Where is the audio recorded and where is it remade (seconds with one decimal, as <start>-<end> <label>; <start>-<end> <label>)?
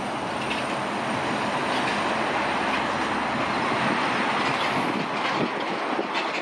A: 0.0-6.4 recorded